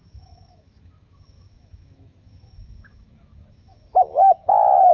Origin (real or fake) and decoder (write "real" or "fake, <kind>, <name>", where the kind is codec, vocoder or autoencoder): fake, autoencoder, DAC-VAE